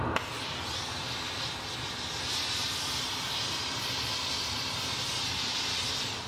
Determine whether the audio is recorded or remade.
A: recorded